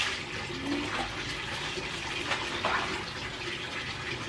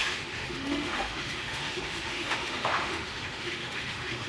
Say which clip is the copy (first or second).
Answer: second